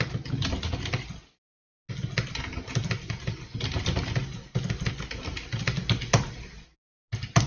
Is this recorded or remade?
recorded